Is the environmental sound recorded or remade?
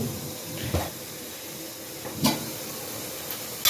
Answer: recorded